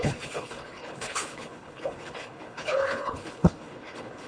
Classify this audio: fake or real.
fake